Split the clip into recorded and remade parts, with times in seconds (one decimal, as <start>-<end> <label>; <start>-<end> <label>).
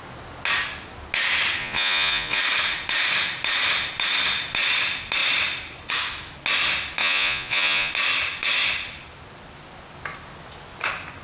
0.0-1.6 recorded; 1.6-2.4 remade; 2.4-7.0 recorded; 7.0-7.9 remade; 7.9-11.2 recorded